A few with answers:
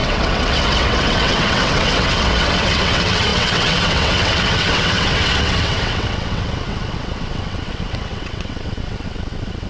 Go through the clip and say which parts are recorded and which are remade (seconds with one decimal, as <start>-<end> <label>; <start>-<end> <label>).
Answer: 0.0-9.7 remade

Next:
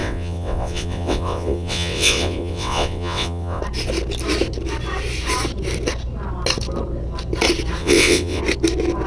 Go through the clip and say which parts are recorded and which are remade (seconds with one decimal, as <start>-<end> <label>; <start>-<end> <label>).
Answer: 0.0-3.6 remade; 3.6-7.8 recorded; 7.8-8.4 remade; 8.4-9.1 recorded

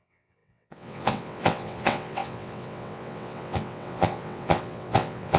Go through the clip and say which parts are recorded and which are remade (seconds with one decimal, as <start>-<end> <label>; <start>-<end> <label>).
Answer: 0.0-5.4 remade

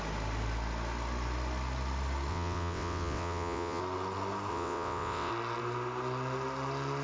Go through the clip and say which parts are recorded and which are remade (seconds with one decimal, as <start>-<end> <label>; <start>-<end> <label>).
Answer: 0.0-2.3 recorded; 2.3-3.8 remade; 3.8-4.5 recorded; 4.5-5.3 remade; 5.3-7.0 recorded

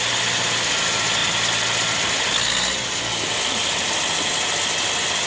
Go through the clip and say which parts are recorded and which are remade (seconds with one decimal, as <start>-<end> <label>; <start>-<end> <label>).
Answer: 0.0-5.3 recorded

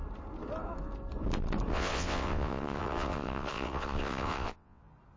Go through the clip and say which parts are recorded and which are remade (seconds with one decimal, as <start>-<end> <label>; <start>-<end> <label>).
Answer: 0.0-1.7 recorded; 1.7-4.8 remade; 4.8-5.2 recorded

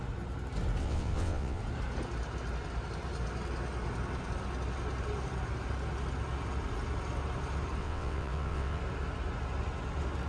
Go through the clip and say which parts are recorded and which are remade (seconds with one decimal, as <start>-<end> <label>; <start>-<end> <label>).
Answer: 0.0-0.8 recorded; 0.8-1.6 remade; 1.6-7.8 recorded; 7.8-8.8 remade; 8.8-10.3 recorded